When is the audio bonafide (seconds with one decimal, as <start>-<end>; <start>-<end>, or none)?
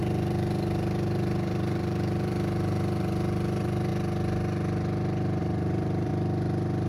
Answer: 3.9-5.4; 6.1-6.9